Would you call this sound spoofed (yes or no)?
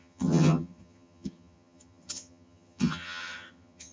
yes